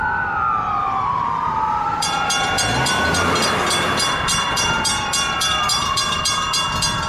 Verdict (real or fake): fake